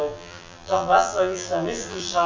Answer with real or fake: fake